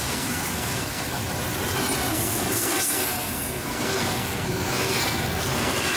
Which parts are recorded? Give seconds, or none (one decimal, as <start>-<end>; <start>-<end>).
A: 1.2-2.1